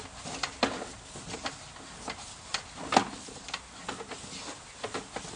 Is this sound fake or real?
real